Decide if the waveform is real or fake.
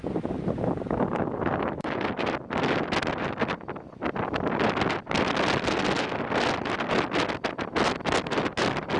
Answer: real